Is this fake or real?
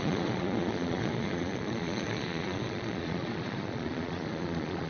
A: fake